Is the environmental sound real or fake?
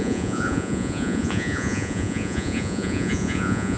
fake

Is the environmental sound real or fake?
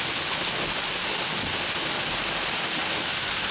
real